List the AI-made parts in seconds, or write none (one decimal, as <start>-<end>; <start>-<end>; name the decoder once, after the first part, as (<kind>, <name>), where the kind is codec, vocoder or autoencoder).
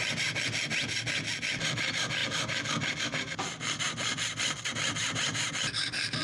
5.0-5.5 (vocoder, BigVGAN v2)